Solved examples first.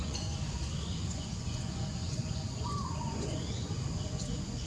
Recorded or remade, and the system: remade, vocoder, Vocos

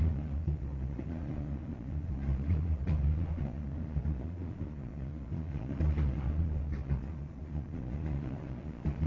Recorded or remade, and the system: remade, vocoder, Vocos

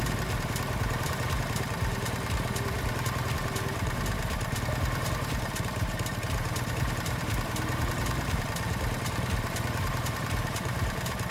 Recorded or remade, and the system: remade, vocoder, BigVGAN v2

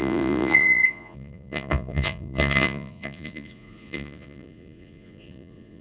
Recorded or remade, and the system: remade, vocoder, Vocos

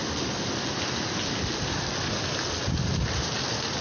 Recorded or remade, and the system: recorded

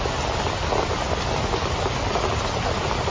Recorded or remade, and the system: recorded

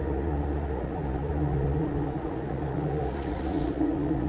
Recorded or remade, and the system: remade, vocoder, Vocos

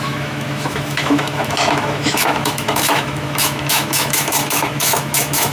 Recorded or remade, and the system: remade, autoencoder, DAC-VAE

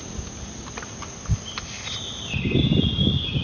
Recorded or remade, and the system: recorded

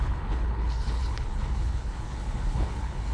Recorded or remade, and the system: remade, codec, HILCodec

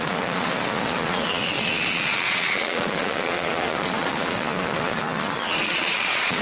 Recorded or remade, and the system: remade, vocoder, Vocos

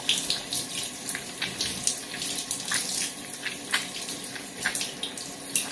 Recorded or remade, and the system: recorded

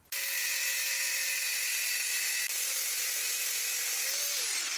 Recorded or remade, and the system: recorded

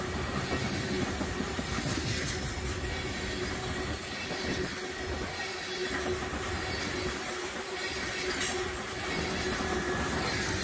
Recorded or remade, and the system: recorded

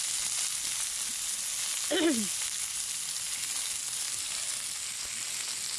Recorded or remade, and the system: recorded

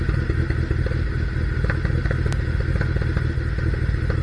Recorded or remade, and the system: recorded